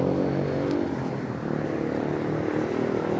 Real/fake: real